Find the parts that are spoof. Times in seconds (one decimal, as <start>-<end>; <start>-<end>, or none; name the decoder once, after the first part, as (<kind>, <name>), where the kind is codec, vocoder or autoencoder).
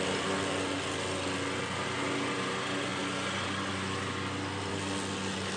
none